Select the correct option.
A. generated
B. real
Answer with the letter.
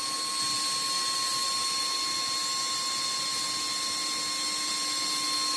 B